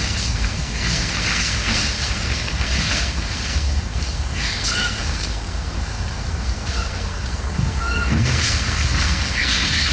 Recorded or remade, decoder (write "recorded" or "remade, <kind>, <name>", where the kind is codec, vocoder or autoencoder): remade, codec, SNAC